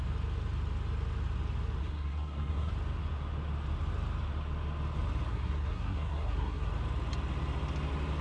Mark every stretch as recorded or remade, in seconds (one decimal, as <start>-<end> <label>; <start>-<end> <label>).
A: 0.0-1.8 recorded; 1.8-2.7 remade; 2.7-5.3 recorded; 5.3-6.7 remade; 6.7-8.2 recorded